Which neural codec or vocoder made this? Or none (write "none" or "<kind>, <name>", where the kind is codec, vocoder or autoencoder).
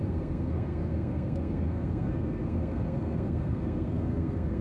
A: codec, SNAC